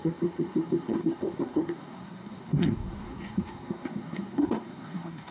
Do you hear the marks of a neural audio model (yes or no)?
yes